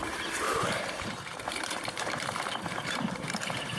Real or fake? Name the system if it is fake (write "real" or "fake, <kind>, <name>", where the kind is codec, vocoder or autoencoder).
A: fake, vocoder, BigVGAN v2